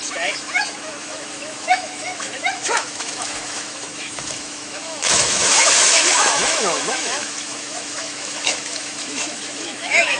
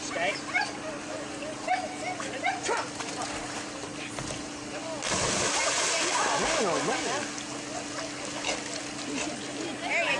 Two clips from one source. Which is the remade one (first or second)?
first